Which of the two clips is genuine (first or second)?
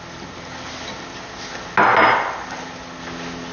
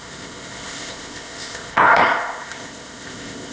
first